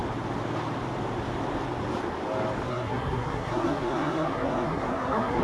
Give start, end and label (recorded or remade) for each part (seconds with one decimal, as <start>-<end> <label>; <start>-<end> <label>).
0.0-2.7 recorded; 2.7-5.4 remade